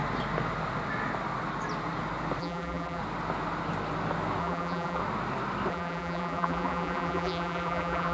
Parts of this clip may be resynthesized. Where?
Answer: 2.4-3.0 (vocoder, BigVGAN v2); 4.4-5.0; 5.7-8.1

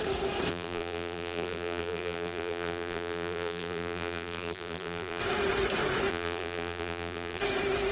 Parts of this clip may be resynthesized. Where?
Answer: 0.5-5.2 (vocoder, BigVGAN v2); 6.1-7.4

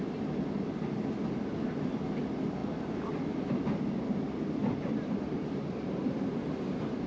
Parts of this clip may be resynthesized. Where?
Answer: 2.6-4.0 (vocoder, BigVGAN v2); 4.6-6.1

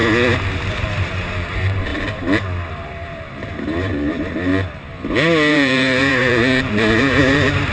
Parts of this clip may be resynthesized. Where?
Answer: 0.7-1.9 (vocoder, BigVGAN v2); 2.7-4.5; 5.5-7.7